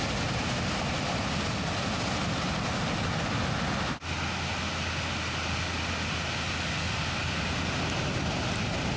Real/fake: real